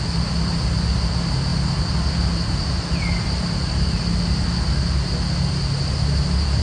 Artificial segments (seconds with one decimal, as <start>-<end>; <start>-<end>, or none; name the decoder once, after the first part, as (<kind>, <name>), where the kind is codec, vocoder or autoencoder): none

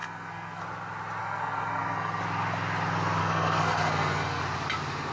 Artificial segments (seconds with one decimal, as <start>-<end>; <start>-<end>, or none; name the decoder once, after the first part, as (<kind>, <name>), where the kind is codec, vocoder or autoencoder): 0.0-0.6 (codec, SNAC); 1.2-2.2; 3.2-4.4

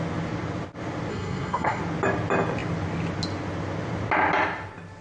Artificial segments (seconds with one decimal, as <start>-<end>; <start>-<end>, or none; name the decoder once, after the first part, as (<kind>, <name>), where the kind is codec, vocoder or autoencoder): 1.1-1.8 (codec, SNAC)

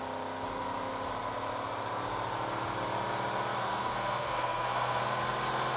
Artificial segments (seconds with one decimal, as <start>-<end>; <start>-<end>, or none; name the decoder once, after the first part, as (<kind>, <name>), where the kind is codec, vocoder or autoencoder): 3.6-5.0 (codec, SNAC)

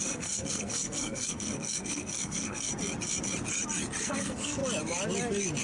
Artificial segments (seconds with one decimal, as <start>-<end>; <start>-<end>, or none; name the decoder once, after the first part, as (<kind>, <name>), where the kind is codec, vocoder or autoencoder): 0.0-2.7 (codec, SNAC); 4.0-4.6

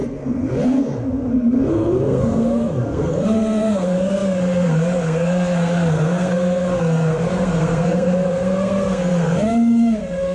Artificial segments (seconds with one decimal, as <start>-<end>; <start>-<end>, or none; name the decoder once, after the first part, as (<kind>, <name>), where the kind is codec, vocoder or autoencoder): 0.0-10.3 (codec, SNAC)

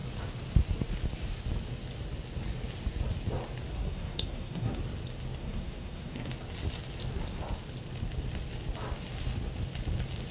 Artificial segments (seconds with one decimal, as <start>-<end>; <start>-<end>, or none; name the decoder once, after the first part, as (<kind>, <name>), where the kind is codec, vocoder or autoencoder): 3.7-4.8 (codec, SNAC); 5.4-6.3

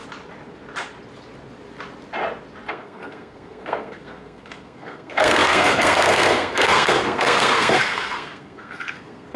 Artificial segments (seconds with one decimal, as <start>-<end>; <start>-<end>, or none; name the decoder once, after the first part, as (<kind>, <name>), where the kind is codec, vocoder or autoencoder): 2.7-9.4 (codec, SNAC)